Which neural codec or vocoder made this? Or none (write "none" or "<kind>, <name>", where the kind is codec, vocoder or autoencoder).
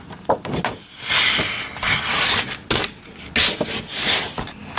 none